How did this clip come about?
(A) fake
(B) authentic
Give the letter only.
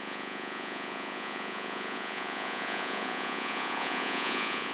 A